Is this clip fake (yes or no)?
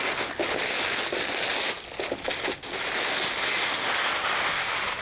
no